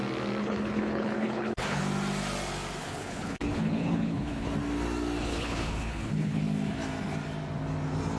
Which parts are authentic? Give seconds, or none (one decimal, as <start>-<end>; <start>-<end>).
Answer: 0.0-0.4; 1.8-2.8; 4.5-5.2; 6.4-8.2